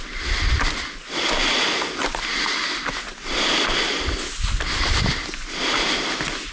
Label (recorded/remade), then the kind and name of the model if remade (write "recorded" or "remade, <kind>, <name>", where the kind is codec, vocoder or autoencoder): recorded